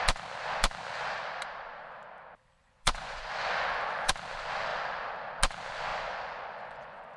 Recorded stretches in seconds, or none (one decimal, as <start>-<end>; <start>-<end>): 0.0-2.6; 4.1-5.9